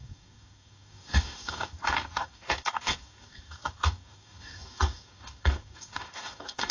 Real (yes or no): no